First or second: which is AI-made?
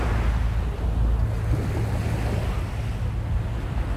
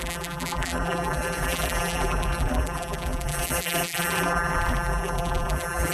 second